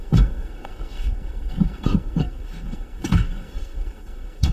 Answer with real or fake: fake